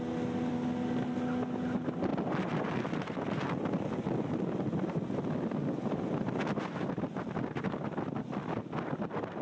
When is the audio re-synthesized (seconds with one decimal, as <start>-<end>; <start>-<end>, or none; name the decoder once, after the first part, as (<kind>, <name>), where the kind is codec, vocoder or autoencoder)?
none